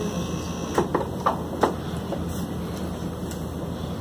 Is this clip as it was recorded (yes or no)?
yes